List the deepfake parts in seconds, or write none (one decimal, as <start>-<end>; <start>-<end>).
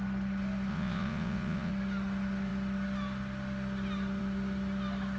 0.7-1.7